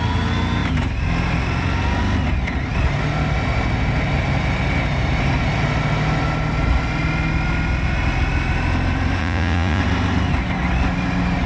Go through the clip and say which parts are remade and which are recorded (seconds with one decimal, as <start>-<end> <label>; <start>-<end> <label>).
0.0-9.2 recorded; 9.2-9.8 remade; 9.8-11.5 recorded